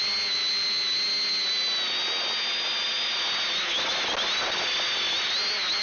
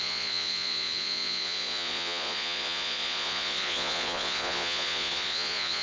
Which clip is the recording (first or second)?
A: first